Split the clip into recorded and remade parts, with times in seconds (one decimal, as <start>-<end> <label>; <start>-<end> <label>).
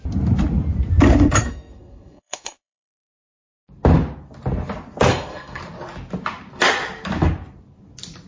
0.0-1.4 recorded; 1.4-3.1 remade; 3.1-5.1 recorded; 5.1-5.6 remade; 5.6-8.3 recorded